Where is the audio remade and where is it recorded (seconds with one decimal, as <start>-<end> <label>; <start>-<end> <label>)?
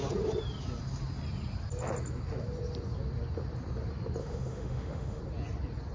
0.0-4.2 recorded; 4.2-5.2 remade; 5.2-5.9 recorded